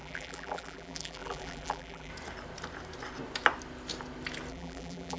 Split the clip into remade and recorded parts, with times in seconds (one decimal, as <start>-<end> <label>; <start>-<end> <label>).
0.0-2.1 remade; 2.1-4.5 recorded; 4.5-5.2 remade

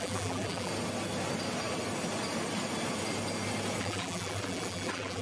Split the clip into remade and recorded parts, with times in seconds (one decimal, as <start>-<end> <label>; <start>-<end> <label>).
0.0-0.7 remade; 0.7-3.8 recorded; 3.8-5.2 remade